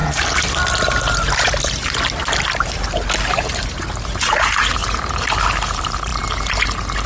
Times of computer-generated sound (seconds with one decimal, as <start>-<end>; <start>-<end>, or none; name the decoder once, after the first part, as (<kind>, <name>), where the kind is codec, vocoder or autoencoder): 3.3-7.1 (vocoder, BigVGAN v2)